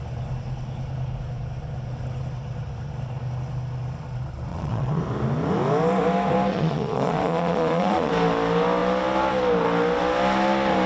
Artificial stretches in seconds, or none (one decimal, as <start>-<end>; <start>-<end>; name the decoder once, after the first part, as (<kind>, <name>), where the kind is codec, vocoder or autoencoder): 4.5-5.0 (vocoder, Vocos); 6.5-8.1